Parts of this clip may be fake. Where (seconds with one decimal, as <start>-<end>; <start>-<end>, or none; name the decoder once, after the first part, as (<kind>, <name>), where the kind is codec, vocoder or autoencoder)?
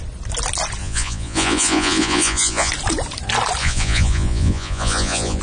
0.8-2.7 (vocoder, Vocos); 3.6-5.4